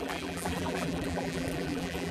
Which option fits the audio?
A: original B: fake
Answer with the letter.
B